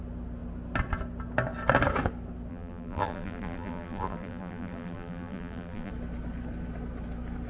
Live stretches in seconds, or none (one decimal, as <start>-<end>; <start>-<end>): 0.0-2.5; 5.9-7.5